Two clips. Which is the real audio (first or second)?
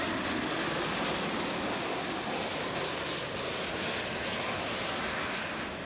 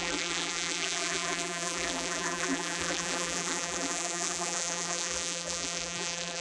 first